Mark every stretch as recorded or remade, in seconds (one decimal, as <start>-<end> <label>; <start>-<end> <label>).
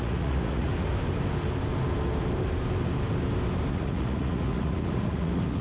0.0-0.7 remade; 0.7-3.7 recorded; 3.7-5.6 remade